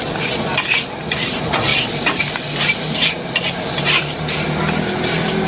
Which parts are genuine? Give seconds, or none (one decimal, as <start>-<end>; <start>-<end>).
0.0-5.5